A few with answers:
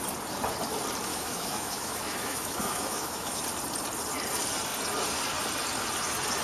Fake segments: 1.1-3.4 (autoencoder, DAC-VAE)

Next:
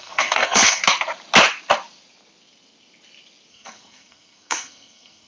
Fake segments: 0.0-0.8 (codec, SNAC); 3.5-5.3

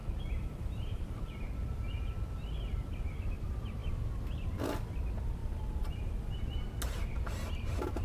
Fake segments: 0.0-1.3 (vocoder, BigVGAN v2); 5.4-6.3

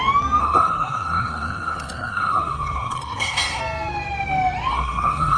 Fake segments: 0.4-3.6 (codec, SNAC); 4.7-5.4